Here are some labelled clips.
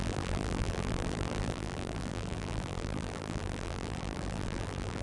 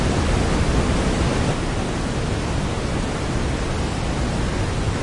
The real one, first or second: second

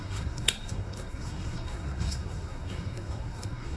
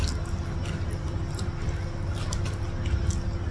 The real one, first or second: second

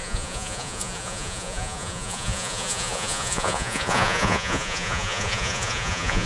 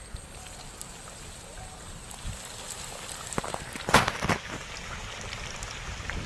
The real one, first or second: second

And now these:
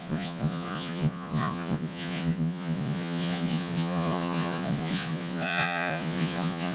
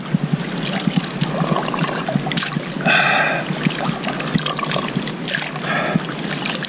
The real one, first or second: second